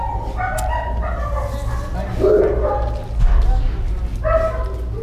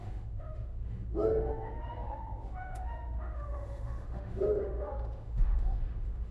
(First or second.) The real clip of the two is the first